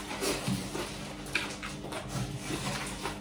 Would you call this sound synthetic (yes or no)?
no